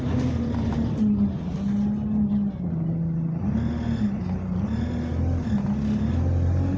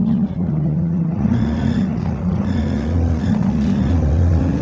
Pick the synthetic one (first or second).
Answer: second